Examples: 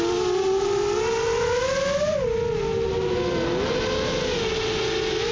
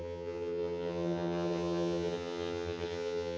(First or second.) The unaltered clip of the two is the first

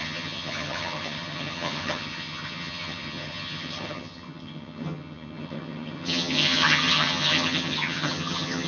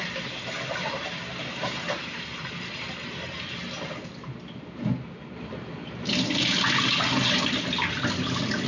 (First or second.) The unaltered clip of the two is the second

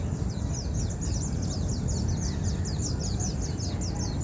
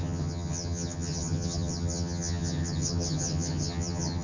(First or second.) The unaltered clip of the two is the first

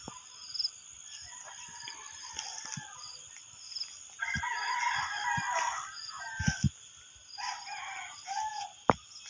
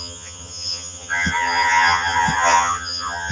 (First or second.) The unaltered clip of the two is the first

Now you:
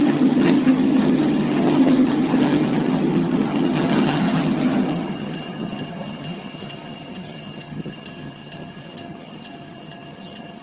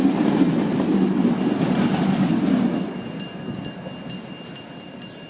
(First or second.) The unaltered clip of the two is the second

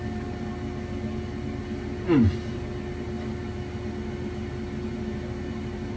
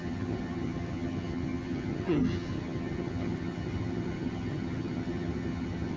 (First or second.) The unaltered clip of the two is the first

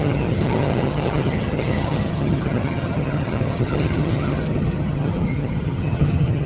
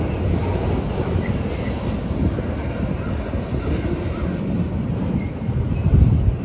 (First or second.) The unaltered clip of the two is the second